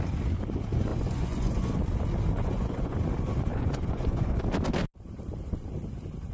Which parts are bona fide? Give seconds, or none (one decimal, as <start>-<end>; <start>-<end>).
0.0-0.9; 1.8-2.4; 3.0-3.5; 4.4-6.3